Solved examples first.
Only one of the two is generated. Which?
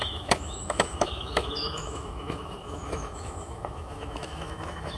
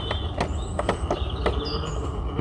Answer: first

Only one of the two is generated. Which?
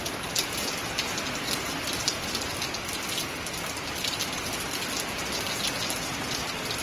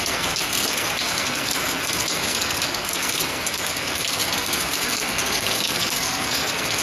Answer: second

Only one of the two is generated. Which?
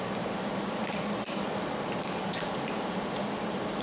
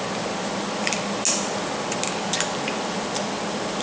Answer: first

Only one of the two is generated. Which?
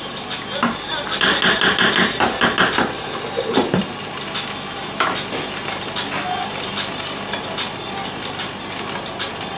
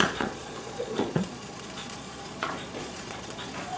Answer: second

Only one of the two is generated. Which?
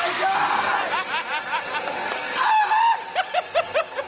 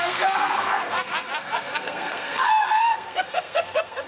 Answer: second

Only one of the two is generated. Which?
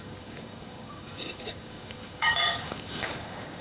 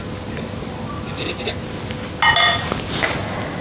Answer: first